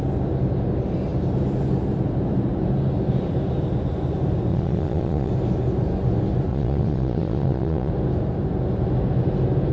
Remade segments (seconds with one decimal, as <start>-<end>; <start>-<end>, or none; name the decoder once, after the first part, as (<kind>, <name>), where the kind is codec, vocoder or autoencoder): 4.5-5.3 (vocoder, Vocos); 6.5-7.9